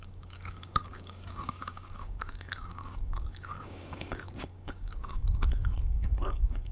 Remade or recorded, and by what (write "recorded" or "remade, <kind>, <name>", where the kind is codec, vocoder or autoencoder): remade, codec, DAC